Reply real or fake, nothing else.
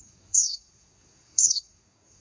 fake